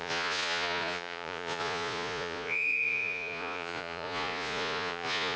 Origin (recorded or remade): remade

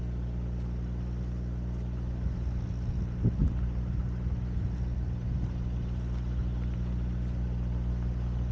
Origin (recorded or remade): recorded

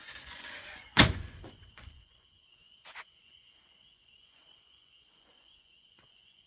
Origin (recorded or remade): remade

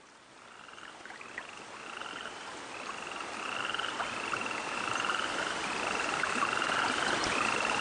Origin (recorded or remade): recorded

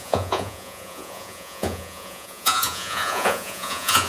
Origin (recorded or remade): remade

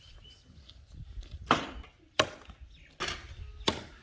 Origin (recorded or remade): recorded